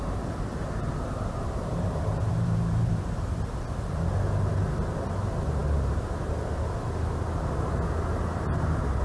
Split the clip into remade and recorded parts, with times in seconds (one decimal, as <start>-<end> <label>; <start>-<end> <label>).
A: 0.0-0.5 recorded; 0.5-2.9 remade; 2.9-9.0 recorded